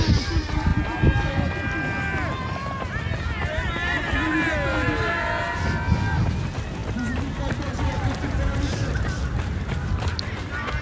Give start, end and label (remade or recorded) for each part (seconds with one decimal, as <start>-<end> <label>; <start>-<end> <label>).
0.0-10.8 recorded